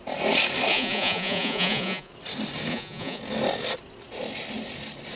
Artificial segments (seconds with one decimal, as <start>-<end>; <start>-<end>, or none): 0.7-2.1; 2.7-3.2